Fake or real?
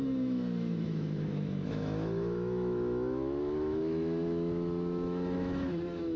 fake